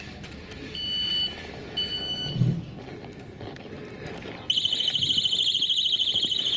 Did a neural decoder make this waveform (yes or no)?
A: yes